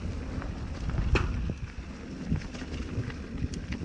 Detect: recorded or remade recorded